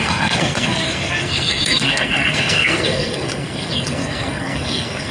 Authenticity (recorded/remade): remade